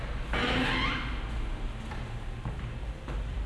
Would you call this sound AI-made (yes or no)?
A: no